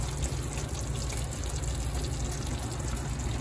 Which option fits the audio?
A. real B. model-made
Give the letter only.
A